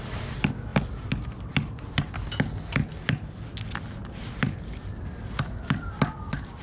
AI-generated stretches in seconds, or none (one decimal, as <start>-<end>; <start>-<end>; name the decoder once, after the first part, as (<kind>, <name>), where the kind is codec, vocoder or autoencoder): none